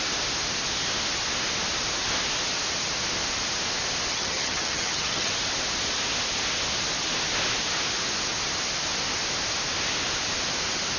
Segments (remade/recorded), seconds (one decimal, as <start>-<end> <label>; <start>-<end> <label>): 0.0-4.1 recorded; 4.1-5.3 remade; 5.3-11.0 recorded